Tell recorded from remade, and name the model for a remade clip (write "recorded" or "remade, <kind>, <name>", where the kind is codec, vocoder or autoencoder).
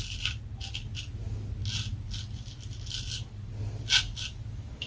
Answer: recorded